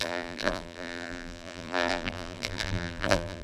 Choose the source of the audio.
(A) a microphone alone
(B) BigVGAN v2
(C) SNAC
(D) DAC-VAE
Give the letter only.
B